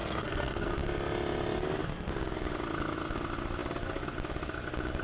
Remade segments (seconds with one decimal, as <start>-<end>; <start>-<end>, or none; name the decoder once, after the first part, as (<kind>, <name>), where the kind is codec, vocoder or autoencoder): 0.0-0.7 (codec, SNAC)